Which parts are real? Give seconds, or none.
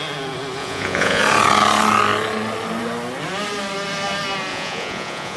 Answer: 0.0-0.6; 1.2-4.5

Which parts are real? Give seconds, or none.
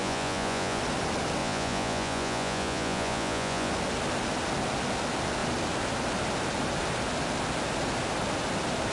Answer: 0.8-1.4; 3.7-8.9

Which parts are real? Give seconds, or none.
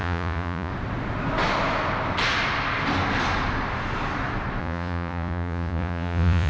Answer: 0.7-4.6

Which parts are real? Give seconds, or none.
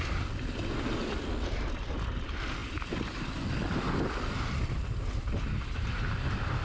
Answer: 0.0-6.6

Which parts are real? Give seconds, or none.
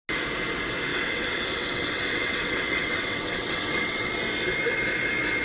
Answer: 0.0-0.9; 4.1-5.4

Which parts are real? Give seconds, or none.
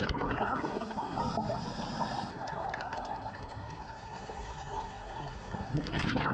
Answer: 1.2-2.3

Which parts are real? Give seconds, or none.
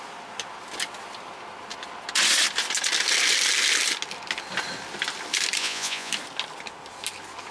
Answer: 0.0-5.6; 6.1-7.5